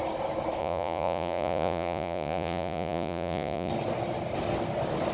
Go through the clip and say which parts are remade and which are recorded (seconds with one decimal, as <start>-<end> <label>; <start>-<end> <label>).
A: 0.0-0.6 recorded; 0.6-3.7 remade; 3.7-5.1 recorded